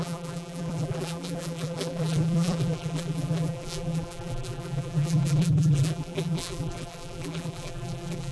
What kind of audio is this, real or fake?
fake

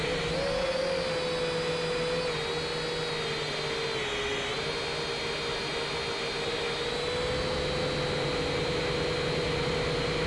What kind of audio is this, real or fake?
real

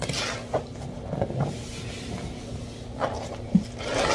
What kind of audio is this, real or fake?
real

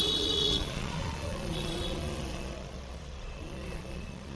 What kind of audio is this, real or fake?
fake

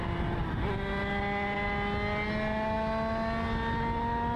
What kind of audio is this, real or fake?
real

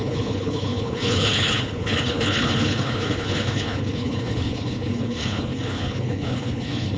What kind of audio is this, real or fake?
fake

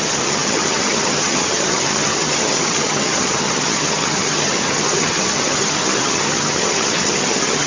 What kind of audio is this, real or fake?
fake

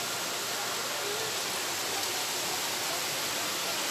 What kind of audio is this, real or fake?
real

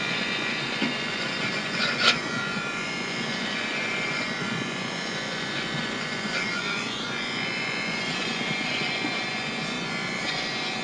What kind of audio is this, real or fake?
fake